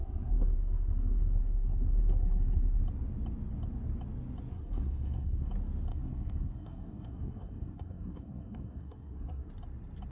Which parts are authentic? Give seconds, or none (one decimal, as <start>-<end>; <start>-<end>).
2.8-4.5; 5.5-5.9; 9.5-10.1